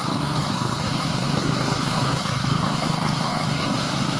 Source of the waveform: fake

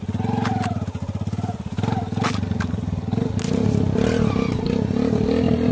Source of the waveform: real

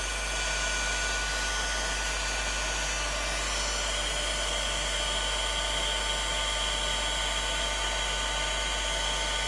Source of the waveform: real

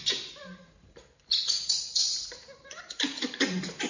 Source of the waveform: fake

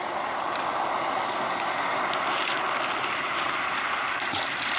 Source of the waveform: real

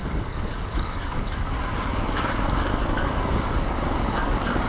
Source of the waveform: fake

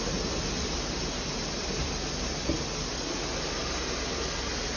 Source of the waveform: real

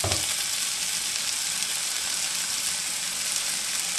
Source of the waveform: real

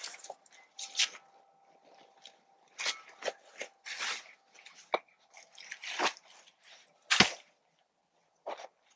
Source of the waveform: real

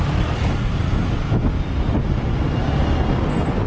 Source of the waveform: real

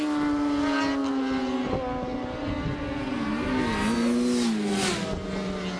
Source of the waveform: real